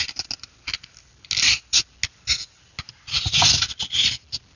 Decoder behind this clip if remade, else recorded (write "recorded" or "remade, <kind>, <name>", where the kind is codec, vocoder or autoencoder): recorded